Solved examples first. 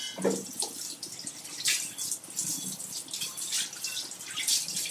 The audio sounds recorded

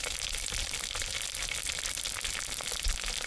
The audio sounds recorded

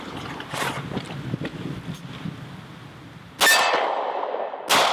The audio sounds recorded